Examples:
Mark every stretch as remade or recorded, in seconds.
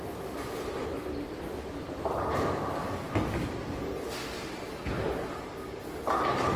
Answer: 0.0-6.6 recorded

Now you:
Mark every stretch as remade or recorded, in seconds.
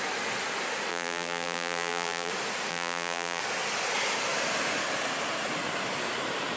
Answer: 0.0-0.9 recorded; 0.9-2.3 remade; 2.3-2.7 recorded; 2.7-3.4 remade; 3.4-6.6 recorded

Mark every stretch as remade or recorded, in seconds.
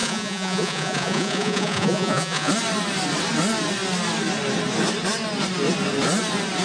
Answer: 0.0-2.5 remade; 2.5-6.6 recorded